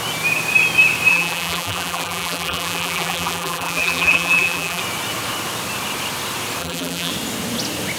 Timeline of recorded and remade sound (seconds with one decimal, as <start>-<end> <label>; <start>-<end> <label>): 0.0-1.1 recorded; 1.1-4.8 remade; 4.8-6.6 recorded; 6.6-7.1 remade; 7.1-8.0 recorded